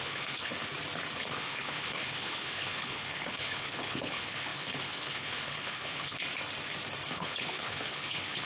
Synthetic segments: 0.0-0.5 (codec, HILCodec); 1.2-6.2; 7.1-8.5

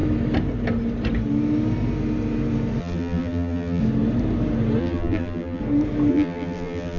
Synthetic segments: 2.8-3.8 (vocoder, BigVGAN v2); 4.8-5.6; 6.1-7.0

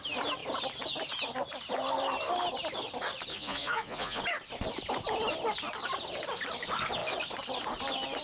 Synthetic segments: 3.3-4.2 (vocoder, Vocos)

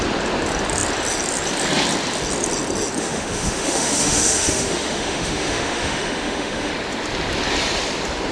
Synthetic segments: 3.0-6.7 (autoencoder, DAC-VAE)

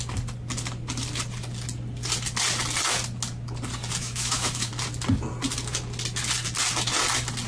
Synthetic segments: 4.0-4.7 (autoencoder, DAC-VAE)

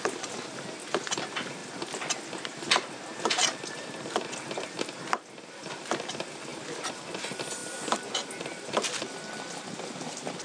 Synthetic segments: none

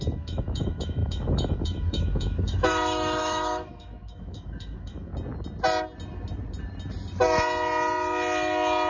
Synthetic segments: 0.0-5.1 (autoencoder, DAC-VAE)